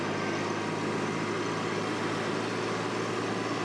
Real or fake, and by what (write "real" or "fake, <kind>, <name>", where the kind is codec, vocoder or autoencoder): real